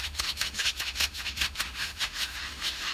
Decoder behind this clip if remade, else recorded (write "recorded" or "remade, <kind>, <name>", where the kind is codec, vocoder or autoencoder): remade, autoencoder, DAC-VAE